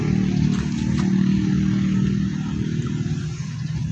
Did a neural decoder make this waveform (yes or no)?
no